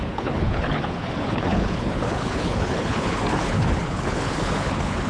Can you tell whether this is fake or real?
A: fake